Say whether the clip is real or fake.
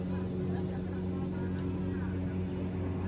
real